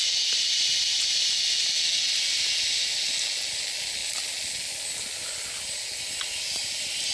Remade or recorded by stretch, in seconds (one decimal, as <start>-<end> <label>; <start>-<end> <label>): 0.0-7.1 recorded